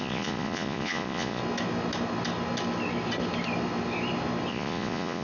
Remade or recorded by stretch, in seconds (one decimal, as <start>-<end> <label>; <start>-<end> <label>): 0.0-1.4 remade; 1.4-4.5 recorded; 4.5-5.2 remade